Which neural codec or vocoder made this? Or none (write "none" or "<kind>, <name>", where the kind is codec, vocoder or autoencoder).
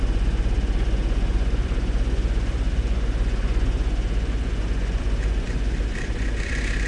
vocoder, Vocos